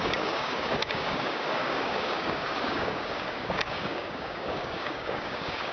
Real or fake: fake